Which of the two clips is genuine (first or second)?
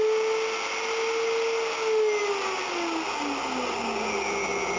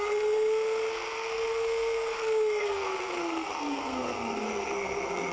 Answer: first